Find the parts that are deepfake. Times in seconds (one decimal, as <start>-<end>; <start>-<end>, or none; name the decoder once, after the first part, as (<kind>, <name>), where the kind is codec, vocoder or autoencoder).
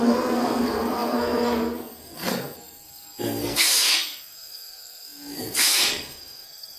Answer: 0.0-6.8 (codec, SNAC)